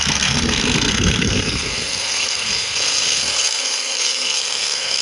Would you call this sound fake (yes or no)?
yes